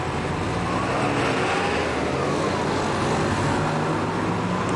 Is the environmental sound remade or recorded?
recorded